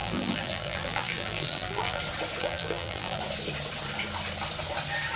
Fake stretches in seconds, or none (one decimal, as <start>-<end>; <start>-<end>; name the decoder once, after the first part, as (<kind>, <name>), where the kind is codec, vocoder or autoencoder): 0.0-2.0 (vocoder, BigVGAN v2); 2.4-3.2